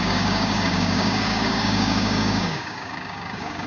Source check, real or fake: fake